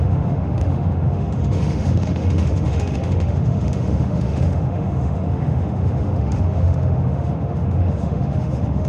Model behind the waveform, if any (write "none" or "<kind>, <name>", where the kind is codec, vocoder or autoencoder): autoencoder, DAC-VAE